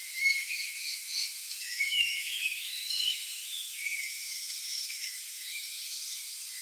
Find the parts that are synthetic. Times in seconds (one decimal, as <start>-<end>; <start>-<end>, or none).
0.0-6.6